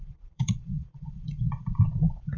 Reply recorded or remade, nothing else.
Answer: remade